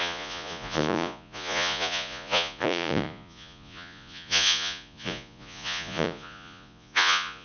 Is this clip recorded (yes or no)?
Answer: no